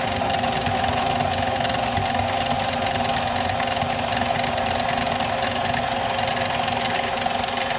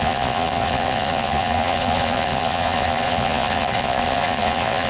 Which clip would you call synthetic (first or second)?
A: second